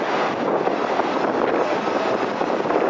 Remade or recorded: recorded